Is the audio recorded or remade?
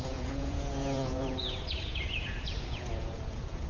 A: remade